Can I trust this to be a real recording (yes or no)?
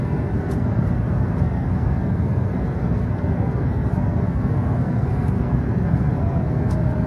no